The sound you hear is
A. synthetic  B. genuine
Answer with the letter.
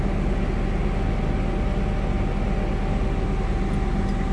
B